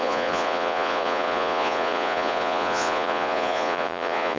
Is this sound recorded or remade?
remade